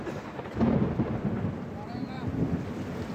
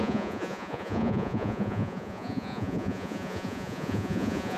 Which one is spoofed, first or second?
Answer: second